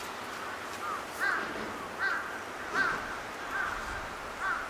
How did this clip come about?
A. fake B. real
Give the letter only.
B